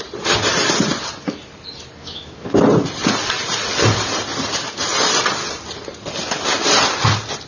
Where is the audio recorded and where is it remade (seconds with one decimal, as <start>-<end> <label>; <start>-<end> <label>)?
0.0-2.0 recorded; 2.0-2.6 remade; 2.6-7.5 recorded